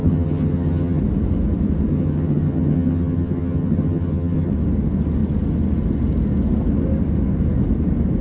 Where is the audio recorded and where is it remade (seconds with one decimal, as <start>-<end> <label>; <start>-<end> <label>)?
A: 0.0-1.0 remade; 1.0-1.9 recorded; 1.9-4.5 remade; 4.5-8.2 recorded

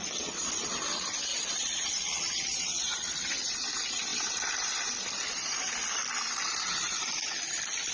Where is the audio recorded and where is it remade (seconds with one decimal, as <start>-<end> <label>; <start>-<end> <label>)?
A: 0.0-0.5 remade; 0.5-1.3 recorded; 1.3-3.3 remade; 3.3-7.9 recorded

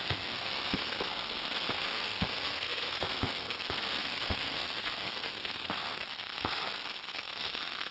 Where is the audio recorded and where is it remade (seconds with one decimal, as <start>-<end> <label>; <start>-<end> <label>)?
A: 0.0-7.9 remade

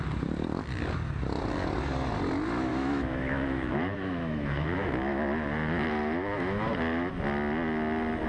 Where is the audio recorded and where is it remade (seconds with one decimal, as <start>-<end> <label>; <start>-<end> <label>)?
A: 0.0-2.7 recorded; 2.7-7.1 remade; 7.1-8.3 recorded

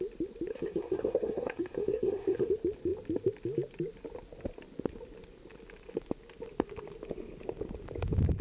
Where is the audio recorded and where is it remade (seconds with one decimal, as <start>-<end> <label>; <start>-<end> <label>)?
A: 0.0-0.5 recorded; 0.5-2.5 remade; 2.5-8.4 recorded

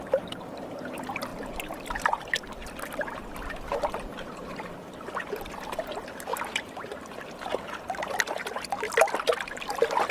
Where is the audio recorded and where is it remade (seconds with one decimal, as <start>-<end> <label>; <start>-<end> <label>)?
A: 0.0-10.1 recorded